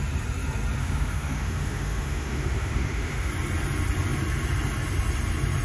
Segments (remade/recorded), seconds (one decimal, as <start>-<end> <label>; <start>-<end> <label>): 0.0-0.8 recorded; 0.8-3.3 remade; 3.3-5.6 recorded